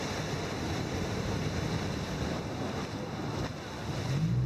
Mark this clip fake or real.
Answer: real